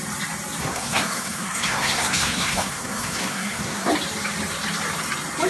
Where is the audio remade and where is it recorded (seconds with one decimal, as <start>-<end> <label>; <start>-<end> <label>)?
0.0-0.6 recorded; 0.6-3.9 remade; 3.9-5.5 recorded